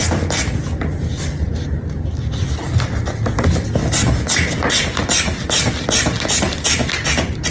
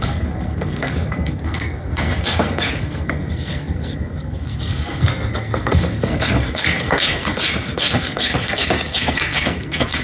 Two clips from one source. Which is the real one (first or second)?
first